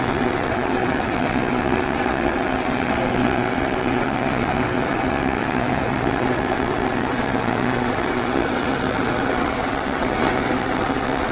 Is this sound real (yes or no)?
no